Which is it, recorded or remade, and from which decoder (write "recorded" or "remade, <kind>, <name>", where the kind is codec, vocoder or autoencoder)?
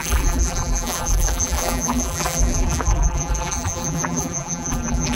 remade, vocoder, BigVGAN v2